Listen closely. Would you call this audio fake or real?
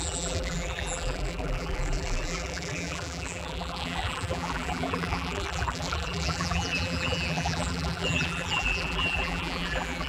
fake